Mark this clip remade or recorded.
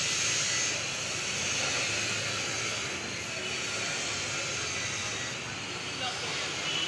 recorded